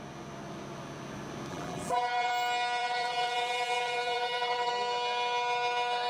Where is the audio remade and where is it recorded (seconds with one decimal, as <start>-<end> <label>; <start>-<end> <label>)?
0.0-1.5 recorded; 1.5-2.3 remade; 2.3-2.8 recorded; 2.8-4.7 remade; 4.7-6.1 recorded

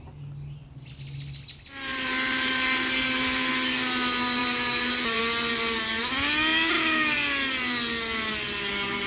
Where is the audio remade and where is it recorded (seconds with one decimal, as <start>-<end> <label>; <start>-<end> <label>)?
0.0-1.9 recorded; 1.9-3.5 remade; 3.5-4.4 recorded; 4.4-5.2 remade; 5.2-9.1 recorded

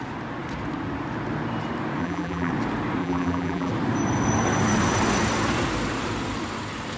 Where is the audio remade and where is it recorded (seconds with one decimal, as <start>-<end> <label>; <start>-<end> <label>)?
0.0-2.0 recorded; 2.0-2.5 remade; 2.5-3.0 recorded; 3.0-3.7 remade; 3.7-7.0 recorded